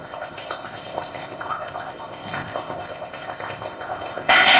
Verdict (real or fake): fake